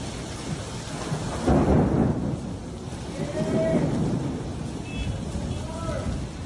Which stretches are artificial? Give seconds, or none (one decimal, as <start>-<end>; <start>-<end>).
none